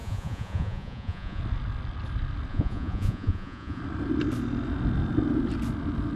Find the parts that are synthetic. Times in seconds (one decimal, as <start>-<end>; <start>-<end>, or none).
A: 0.0-1.4; 2.5-3.8